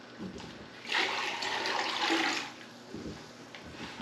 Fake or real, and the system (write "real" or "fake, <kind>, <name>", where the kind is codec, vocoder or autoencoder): real